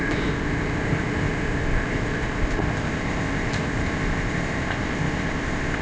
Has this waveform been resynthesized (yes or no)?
yes